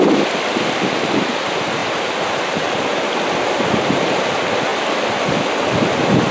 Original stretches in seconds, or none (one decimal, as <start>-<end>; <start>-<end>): 0.0-1.8; 3.0-6.3